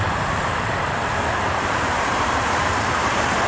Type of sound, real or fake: fake